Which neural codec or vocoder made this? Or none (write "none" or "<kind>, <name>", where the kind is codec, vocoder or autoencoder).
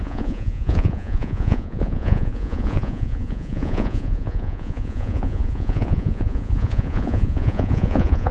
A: vocoder, Vocos